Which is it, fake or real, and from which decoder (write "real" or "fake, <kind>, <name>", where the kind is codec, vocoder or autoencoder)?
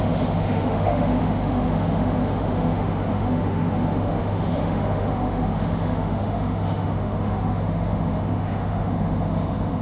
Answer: fake, autoencoder, DAC-VAE